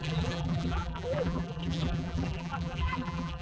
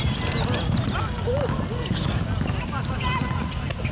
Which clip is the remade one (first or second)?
first